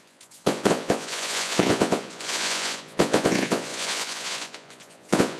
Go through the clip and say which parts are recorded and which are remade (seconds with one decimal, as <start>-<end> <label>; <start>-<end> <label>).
0.0-5.4 remade